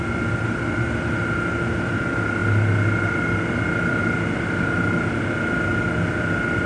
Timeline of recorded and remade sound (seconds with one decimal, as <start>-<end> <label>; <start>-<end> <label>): 0.0-6.7 recorded